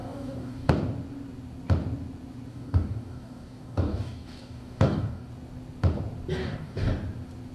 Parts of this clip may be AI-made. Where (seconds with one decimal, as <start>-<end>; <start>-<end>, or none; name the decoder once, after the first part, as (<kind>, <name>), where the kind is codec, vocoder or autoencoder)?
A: 0.0-0.7 (codec, DAC); 2.5-5.3; 6.4-6.9